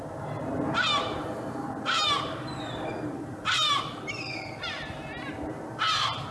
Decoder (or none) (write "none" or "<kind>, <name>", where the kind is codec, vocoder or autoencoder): vocoder, BigVGAN v2